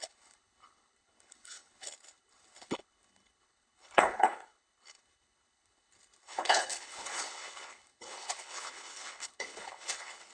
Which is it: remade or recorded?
remade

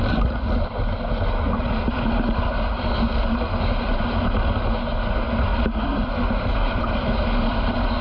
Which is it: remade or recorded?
recorded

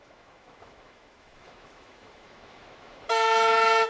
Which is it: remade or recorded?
remade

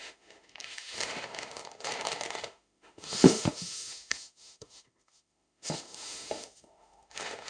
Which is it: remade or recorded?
remade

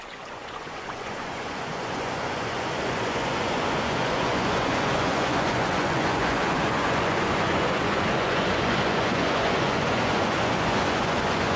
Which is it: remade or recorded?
remade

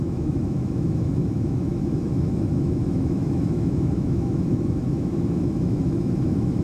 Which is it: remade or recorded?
remade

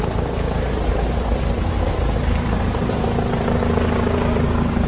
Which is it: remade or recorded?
remade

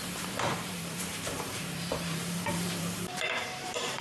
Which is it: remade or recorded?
remade